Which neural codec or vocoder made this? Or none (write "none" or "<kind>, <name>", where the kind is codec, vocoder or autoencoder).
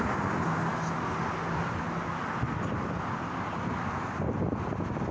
none